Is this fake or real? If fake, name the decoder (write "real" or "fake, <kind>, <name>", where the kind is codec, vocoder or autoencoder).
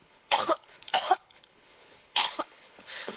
fake, codec, HILCodec